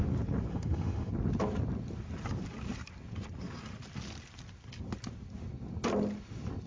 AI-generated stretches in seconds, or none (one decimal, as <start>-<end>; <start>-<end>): 0.5-1.1